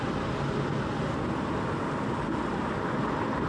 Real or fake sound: real